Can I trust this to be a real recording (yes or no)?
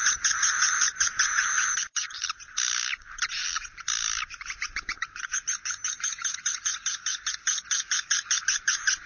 no